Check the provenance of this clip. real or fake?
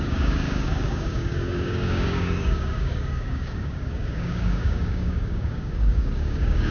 fake